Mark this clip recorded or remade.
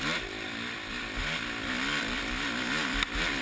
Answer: remade